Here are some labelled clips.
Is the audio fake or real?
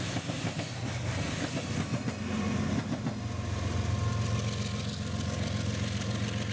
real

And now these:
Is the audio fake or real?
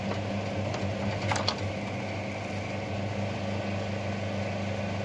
real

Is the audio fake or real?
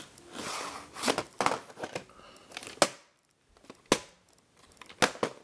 real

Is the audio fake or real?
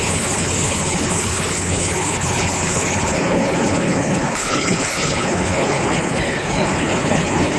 fake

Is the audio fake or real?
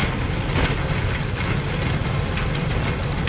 real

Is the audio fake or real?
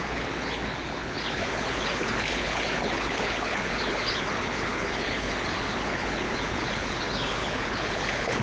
fake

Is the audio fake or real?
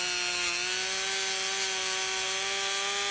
real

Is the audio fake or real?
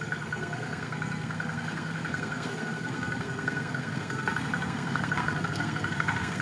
fake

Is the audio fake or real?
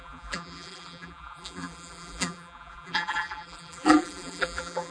fake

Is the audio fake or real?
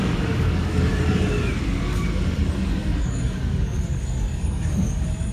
fake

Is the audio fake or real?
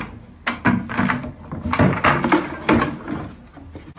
real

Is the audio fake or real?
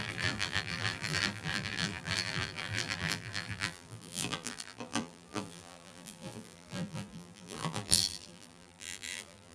fake